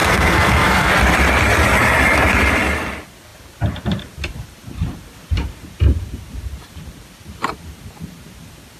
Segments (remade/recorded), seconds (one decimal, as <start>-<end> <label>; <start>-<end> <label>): 0.0-0.9 remade; 0.9-8.8 recorded